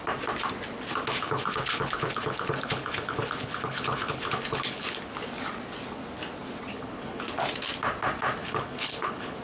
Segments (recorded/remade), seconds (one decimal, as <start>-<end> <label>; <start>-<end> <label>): 0.0-1.2 recorded; 1.2-5.0 remade; 5.0-6.7 recorded; 6.7-7.2 remade; 7.2-8.4 recorded; 8.4-9.4 remade